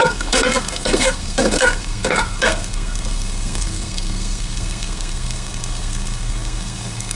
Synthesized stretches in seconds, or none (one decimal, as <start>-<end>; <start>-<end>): 0.0-7.2